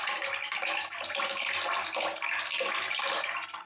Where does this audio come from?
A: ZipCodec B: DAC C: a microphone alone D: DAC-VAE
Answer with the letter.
C